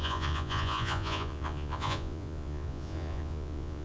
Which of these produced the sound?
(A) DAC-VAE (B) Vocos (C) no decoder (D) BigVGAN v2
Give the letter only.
B